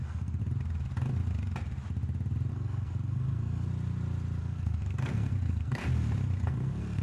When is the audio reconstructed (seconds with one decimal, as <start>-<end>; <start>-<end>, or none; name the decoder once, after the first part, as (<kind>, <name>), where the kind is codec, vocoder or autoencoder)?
0.0-0.4 (codec, SNAC); 2.5-3.7; 4.4-5.8; 6.4-7.0